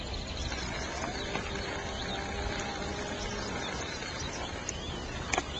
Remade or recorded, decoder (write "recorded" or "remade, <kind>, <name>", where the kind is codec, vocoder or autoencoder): recorded